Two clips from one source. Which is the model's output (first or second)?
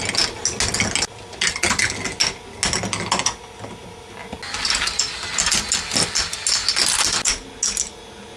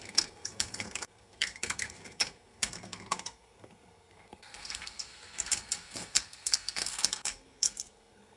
second